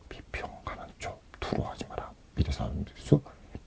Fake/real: fake